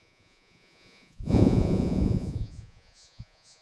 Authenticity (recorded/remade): remade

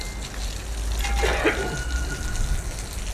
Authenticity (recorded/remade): recorded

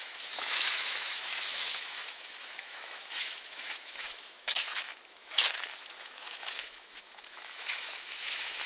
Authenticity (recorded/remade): remade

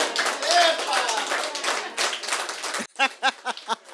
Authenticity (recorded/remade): recorded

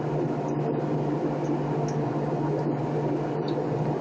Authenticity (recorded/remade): recorded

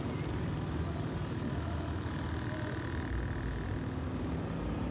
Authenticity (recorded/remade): recorded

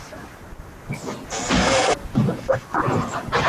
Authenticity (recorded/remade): recorded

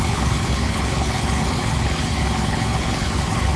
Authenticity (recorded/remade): remade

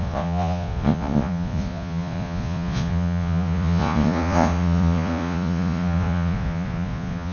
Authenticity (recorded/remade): remade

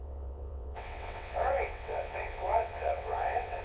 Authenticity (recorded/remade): remade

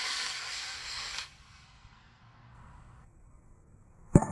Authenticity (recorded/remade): remade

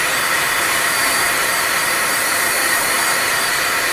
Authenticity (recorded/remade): remade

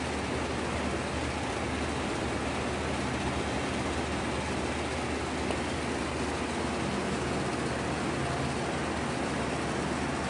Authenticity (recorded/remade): recorded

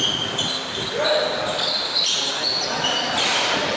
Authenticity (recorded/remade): recorded